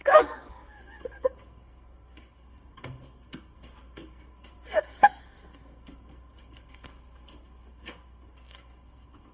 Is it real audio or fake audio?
fake